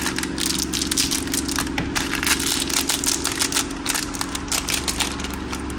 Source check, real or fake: real